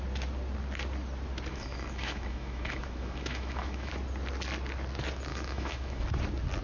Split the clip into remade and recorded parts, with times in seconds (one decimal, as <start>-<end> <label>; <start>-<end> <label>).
0.0-1.5 recorded; 1.5-3.9 remade; 3.9-5.3 recorded; 5.3-6.0 remade; 6.0-6.6 recorded